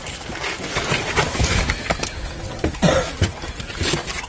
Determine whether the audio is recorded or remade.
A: recorded